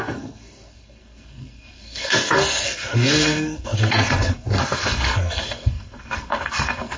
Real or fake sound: fake